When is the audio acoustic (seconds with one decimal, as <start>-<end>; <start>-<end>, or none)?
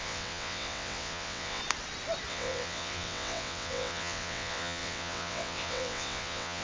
1.6-2.3